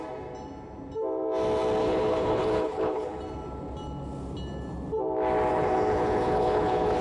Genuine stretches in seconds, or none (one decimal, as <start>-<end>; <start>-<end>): 0.0-1.8; 3.2-5.5